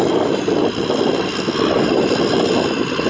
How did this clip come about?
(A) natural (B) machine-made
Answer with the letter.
A